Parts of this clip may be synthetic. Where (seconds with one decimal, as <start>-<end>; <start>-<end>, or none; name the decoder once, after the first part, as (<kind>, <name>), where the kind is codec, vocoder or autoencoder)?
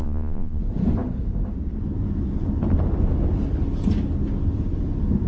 0.0-0.6 (vocoder, Vocos)